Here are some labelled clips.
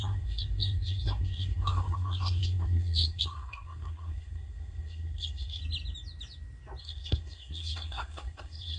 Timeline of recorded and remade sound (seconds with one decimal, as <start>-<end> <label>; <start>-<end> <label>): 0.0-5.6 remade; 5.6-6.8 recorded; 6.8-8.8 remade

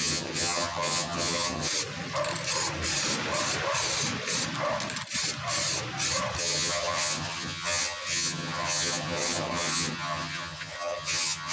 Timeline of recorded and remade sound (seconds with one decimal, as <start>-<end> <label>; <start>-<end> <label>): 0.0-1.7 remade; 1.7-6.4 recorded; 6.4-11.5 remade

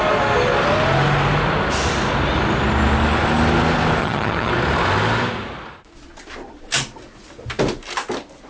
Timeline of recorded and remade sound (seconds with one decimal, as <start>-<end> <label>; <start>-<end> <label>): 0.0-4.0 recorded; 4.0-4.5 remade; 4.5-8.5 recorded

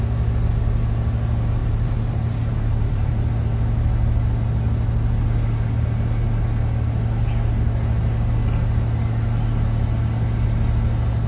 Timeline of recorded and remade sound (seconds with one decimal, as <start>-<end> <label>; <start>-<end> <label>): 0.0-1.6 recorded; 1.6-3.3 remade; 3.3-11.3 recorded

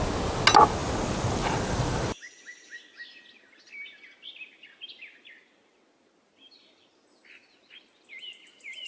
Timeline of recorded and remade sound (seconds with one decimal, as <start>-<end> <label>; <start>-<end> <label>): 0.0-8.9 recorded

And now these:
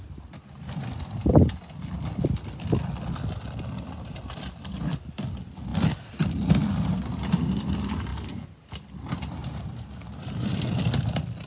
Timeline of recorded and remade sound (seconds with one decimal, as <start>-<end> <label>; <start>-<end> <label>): 0.0-8.1 recorded; 8.1-8.7 remade; 8.7-9.4 recorded; 9.4-10.6 remade; 10.6-11.5 recorded

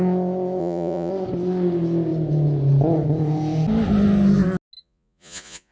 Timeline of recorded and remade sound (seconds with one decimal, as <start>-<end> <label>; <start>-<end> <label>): 0.0-0.6 recorded; 0.6-1.1 remade; 1.1-4.8 recorded; 4.8-5.7 remade